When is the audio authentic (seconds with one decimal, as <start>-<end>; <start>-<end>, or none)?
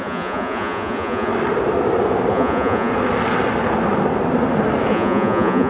1.3-2.3; 2.9-4.9